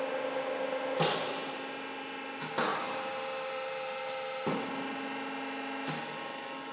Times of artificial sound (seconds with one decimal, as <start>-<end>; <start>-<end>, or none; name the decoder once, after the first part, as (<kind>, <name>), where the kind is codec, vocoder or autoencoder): 2.7-4.0 (vocoder, BigVGAN v2)